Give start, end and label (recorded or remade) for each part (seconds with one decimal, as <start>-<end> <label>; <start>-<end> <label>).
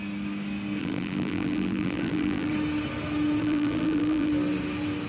0.0-0.8 recorded; 0.8-2.5 remade; 2.5-3.4 recorded; 3.4-4.3 remade; 4.3-5.1 recorded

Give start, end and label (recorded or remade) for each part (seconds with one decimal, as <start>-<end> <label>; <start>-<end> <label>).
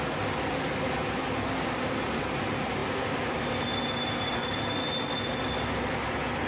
0.0-6.5 recorded